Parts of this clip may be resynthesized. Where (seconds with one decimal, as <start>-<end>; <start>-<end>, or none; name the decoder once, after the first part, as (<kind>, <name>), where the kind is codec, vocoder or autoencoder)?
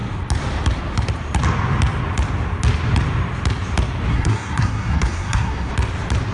4.1-5.7 (codec, SNAC)